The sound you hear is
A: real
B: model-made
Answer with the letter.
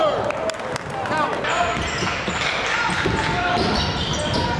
A